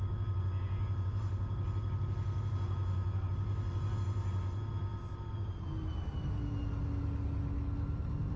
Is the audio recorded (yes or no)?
yes